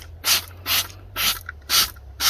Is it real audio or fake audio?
real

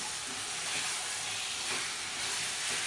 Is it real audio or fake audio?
real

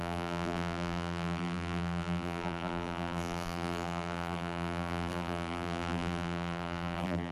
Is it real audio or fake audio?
fake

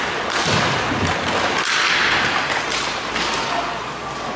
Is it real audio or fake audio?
real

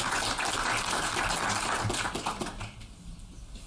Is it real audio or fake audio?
real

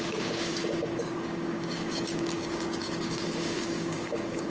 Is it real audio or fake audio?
fake